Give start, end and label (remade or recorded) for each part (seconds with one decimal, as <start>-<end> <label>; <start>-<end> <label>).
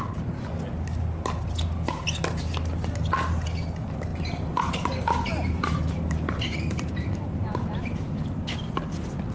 0.0-4.1 recorded; 4.1-8.7 remade; 8.7-9.3 recorded